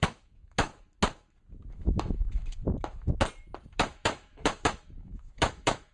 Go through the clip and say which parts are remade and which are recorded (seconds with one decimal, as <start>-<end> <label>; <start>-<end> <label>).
0.0-0.7 remade; 0.7-1.7 recorded; 1.7-2.6 remade; 2.6-3.6 recorded; 3.6-5.9 remade